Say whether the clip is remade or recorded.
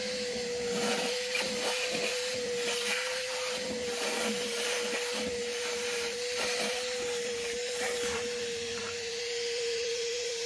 remade